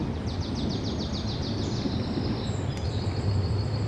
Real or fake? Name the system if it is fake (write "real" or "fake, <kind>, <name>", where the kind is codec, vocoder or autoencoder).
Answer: real